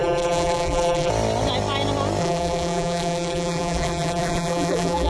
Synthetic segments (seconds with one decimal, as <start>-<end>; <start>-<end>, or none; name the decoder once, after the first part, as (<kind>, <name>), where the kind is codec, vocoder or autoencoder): 0.0-1.1 (vocoder, BigVGAN v2); 2.2-5.1

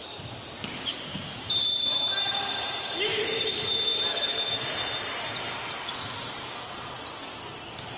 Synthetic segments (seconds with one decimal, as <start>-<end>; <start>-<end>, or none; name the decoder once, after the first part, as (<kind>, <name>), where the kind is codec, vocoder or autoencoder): 0.7-3.9 (vocoder, BigVGAN v2); 7.4-8.0

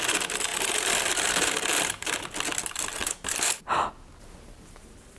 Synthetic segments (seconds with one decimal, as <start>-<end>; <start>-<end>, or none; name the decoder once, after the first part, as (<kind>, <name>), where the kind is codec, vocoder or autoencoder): 0.5-2.2 (vocoder, BigVGAN v2); 3.0-3.6

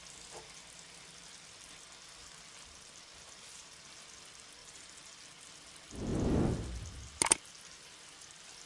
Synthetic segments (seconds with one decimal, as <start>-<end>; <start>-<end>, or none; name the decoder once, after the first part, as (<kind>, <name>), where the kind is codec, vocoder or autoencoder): 4.6-5.2 (vocoder, BigVGAN v2)

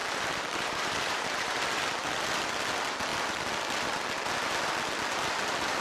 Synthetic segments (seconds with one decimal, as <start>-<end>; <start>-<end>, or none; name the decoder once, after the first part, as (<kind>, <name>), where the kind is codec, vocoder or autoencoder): 0.0-1.6 (vocoder, BigVGAN v2)

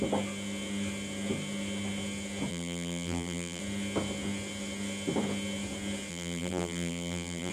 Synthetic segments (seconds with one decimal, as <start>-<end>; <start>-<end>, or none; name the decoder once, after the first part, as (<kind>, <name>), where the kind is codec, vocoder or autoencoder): 2.5-3.6 (vocoder, BigVGAN v2); 6.1-7.5